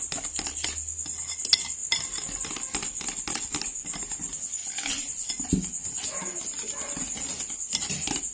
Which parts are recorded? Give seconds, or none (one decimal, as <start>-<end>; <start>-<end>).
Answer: 0.0-8.3